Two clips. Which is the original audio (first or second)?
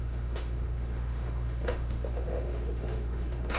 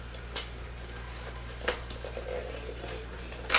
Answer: second